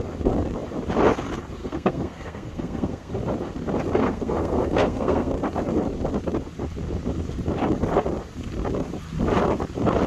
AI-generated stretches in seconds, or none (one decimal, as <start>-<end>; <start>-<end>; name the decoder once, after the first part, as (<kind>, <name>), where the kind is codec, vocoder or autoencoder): 1.6-3.1 (codec, SNAC); 4.0-5.3